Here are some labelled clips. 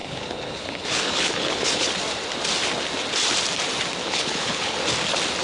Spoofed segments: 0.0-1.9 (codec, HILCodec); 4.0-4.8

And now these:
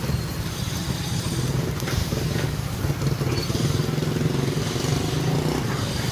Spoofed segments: 2.0-2.8 (codec, DAC)

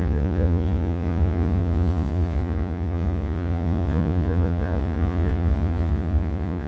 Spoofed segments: 0.0-6.7 (vocoder, Vocos)

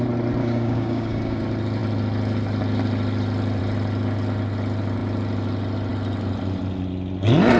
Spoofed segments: 0.4-1.4 (codec, DAC)

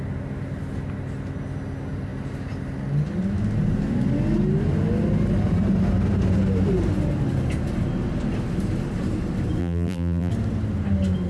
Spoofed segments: 9.6-10.3 (vocoder, BigVGAN v2)

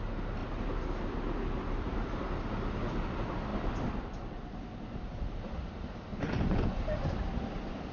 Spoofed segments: 6.1-6.8 (vocoder, Vocos)

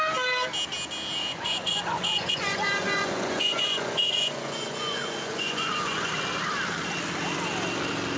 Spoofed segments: 1.2-6.1 (vocoder, Vocos)